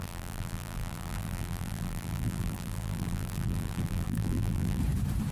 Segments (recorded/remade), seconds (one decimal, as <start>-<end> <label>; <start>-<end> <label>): 0.0-4.8 remade; 4.8-5.3 recorded